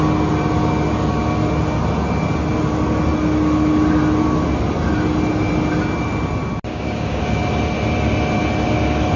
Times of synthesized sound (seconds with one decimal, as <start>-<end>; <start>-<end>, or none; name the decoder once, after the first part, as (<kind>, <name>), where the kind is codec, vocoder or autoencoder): 6.7-7.2 (codec, DAC)